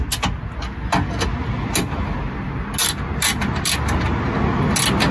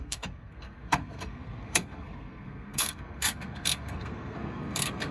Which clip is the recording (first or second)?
first